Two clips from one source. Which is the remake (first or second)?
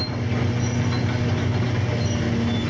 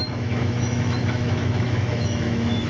second